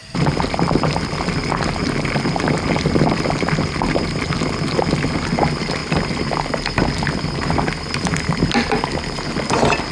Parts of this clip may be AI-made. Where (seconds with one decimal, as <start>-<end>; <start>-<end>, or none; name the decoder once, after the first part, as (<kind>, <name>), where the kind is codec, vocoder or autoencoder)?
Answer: none